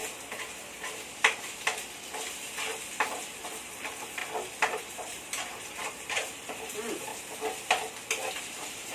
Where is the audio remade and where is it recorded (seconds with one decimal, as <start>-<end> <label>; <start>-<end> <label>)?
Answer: 0.0-3.4 recorded; 3.4-4.2 remade; 4.2-4.7 recorded; 4.7-7.1 remade; 7.1-8.3 recorded; 8.3-8.9 remade